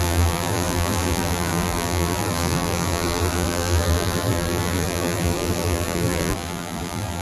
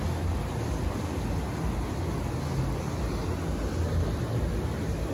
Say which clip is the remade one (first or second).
first